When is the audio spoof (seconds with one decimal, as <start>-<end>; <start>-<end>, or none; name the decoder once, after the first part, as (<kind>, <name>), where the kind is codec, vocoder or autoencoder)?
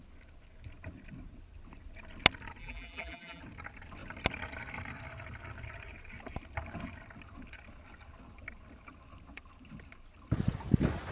2.6-3.4 (vocoder, BigVGAN v2)